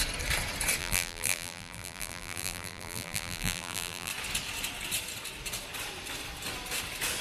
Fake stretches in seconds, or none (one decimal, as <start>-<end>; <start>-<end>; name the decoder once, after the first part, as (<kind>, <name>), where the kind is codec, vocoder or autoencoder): 0.8-4.1 (vocoder, BigVGAN v2)